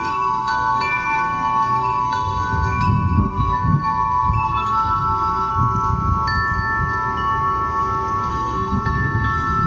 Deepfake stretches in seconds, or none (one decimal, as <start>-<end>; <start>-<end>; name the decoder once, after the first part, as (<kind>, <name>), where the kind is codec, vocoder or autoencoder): 0.0-5.5 (codec, SNAC); 8.3-9.7

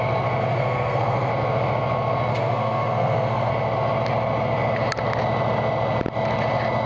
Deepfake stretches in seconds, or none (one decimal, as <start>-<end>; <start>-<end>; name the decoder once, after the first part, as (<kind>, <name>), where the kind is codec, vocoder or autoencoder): 0.4-1.3 (codec, SNAC); 2.3-3.5

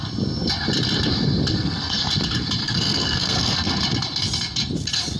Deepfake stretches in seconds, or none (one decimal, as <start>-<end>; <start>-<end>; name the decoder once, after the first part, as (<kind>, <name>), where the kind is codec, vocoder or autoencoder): 1.5-2.1 (codec, SNAC); 2.6-3.7

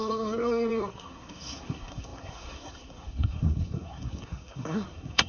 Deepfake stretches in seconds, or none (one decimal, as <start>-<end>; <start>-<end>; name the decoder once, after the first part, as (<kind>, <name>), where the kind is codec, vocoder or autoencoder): 0.0-5.3 (codec, SNAC)

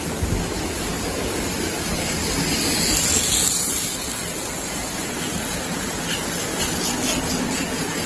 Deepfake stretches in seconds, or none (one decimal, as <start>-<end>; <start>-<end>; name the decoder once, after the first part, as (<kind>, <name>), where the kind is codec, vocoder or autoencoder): none

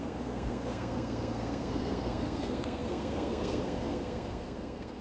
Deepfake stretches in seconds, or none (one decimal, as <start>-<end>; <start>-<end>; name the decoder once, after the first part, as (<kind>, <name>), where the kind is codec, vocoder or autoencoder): 0.0-5.0 (codec, SNAC)

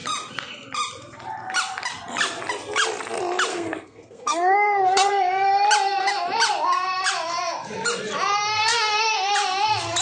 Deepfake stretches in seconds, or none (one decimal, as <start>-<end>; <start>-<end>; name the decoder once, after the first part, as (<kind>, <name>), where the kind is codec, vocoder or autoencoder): 3.5-5.1 (codec, SNAC); 8.5-9.3